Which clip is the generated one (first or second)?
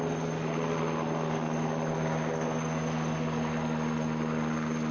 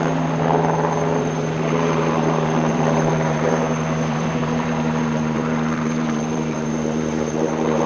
second